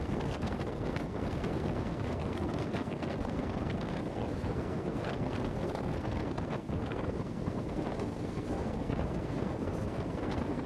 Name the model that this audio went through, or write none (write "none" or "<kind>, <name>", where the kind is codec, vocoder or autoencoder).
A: codec, SNAC